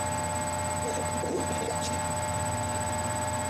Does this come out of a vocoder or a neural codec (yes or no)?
no